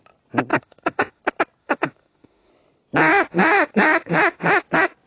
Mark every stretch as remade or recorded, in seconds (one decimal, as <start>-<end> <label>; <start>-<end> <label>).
0.0-0.5 recorded; 0.5-1.2 remade; 1.2-1.6 recorded; 1.6-2.5 remade; 2.5-3.1 recorded; 3.1-4.6 remade; 4.6-5.1 recorded